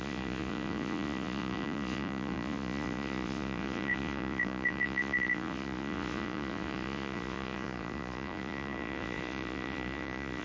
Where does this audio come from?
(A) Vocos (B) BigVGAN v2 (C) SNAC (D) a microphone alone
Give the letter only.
A